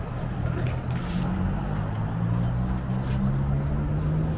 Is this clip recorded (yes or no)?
yes